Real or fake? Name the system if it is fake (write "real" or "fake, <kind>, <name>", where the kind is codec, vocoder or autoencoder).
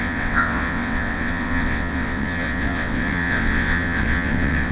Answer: fake, vocoder, WaveNeXt